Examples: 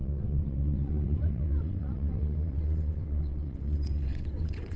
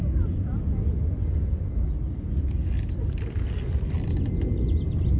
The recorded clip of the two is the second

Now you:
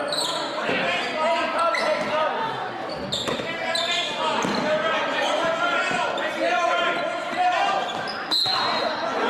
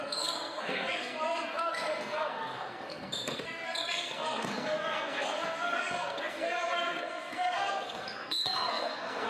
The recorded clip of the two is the first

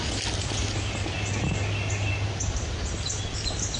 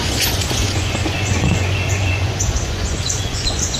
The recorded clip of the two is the first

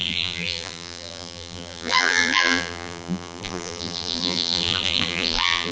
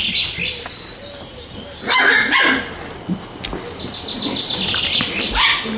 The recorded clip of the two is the second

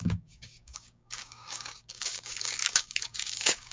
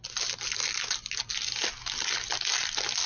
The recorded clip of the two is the second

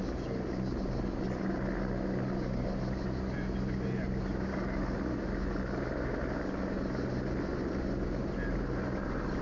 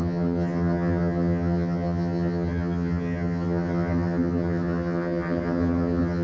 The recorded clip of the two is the first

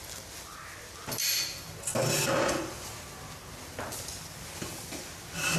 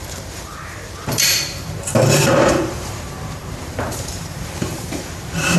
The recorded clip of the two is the first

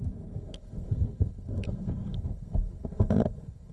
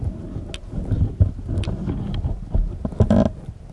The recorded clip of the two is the second